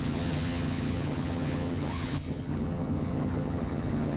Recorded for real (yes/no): no